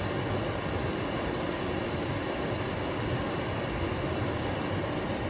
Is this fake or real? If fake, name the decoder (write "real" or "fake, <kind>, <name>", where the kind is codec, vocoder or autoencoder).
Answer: real